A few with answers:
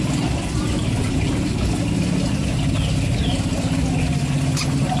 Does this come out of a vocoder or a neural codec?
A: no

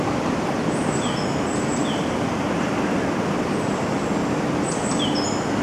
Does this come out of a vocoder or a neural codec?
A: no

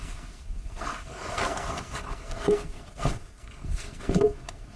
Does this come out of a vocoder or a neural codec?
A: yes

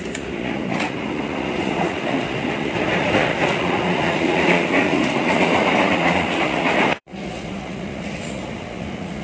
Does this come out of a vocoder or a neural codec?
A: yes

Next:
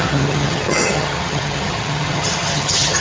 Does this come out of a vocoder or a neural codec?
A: yes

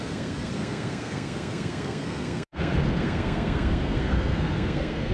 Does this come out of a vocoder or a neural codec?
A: yes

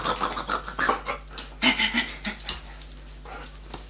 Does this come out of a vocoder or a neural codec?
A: no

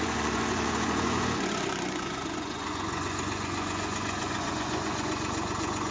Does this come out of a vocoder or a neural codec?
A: yes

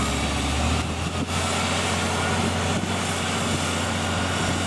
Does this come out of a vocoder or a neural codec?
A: no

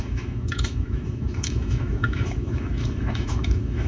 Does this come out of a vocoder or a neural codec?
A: yes